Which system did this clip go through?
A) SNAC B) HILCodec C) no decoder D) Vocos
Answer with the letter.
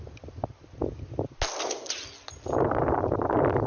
C